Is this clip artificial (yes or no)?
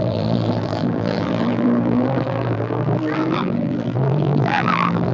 yes